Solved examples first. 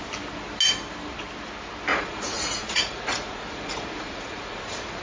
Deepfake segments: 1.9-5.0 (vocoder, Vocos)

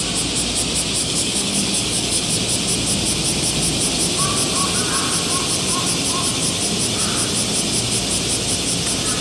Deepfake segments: 1.0-2.3 (codec, DAC)